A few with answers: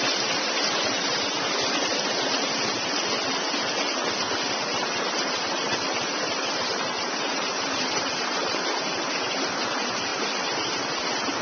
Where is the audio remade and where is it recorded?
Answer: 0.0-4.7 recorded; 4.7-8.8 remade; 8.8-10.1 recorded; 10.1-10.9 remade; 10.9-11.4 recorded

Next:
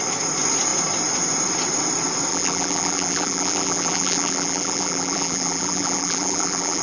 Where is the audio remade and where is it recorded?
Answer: 0.0-2.3 recorded; 2.3-6.8 remade

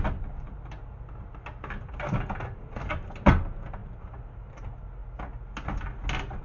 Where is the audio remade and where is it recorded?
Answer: 0.0-3.8 recorded; 3.8-4.6 remade; 4.6-6.4 recorded

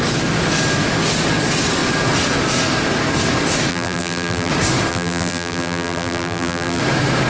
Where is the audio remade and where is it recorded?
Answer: 0.0-3.7 recorded; 3.7-4.5 remade; 4.5-4.9 recorded; 4.9-6.8 remade; 6.8-7.3 recorded

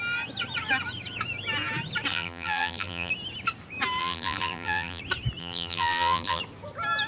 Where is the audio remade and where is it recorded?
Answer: 0.0-2.1 recorded; 2.1-3.1 remade; 3.1-4.0 recorded; 4.0-5.0 remade; 5.0-5.4 recorded; 5.4-6.4 remade; 6.4-7.1 recorded

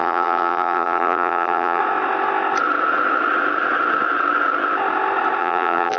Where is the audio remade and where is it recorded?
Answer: 0.0-1.8 remade; 1.8-5.4 recorded; 5.4-6.0 remade

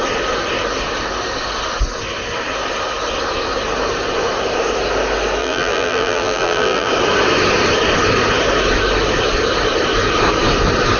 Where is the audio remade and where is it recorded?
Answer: 0.0-5.4 recorded; 5.4-6.9 remade; 6.9-11.0 recorded

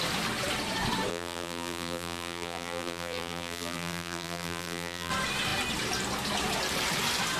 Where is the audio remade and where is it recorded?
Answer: 0.0-1.1 recorded; 1.1-5.1 remade; 5.1-7.4 recorded